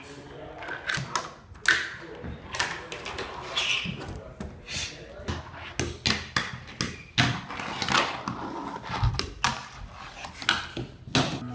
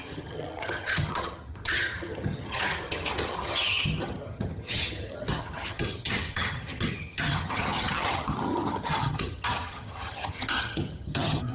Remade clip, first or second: second